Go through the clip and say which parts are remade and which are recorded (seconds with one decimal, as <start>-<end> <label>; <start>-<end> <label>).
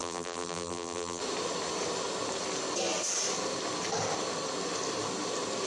0.0-1.2 remade; 1.2-5.7 recorded